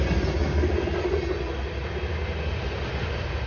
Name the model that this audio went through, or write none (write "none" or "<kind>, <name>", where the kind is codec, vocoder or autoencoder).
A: none